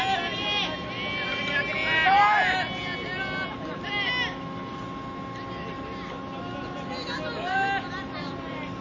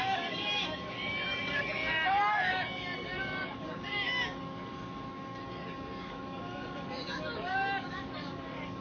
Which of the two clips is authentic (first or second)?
first